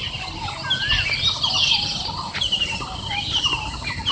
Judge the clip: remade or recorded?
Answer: recorded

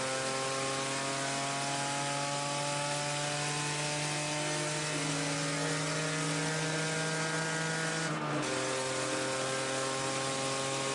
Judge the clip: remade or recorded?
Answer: recorded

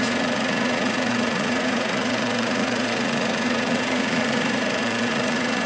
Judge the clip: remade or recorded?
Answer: remade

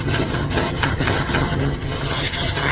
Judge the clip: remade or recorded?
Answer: remade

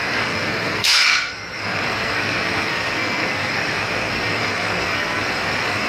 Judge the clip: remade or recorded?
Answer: remade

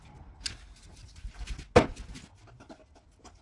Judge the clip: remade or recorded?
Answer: recorded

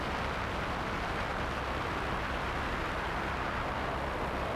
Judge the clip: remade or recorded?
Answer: recorded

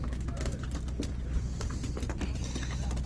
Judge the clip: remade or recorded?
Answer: recorded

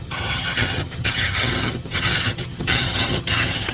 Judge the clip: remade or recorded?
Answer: remade